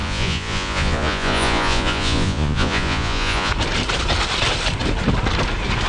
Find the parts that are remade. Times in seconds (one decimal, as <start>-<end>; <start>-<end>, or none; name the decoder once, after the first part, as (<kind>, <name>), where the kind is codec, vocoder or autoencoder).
0.0-3.5 (vocoder, Vocos)